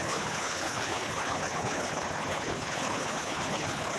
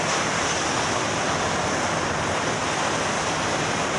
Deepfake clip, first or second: first